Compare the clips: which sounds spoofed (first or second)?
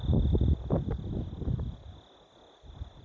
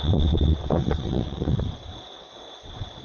second